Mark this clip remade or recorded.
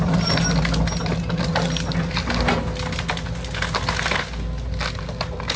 recorded